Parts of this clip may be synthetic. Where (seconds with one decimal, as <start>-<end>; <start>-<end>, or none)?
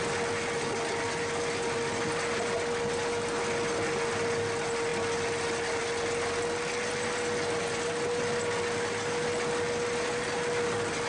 none